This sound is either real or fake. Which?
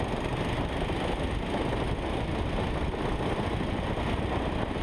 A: real